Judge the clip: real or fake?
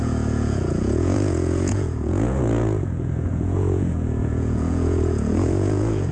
fake